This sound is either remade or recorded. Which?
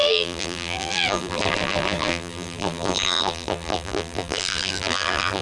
remade